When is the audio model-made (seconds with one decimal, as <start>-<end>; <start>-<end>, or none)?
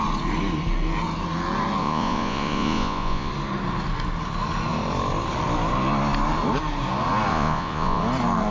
1.8-3.3; 7.3-8.0